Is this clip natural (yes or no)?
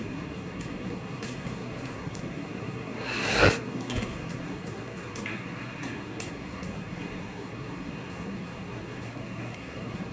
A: no